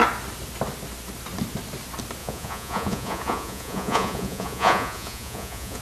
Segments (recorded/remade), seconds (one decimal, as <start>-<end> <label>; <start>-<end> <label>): 0.0-2.2 recorded; 2.2-5.8 remade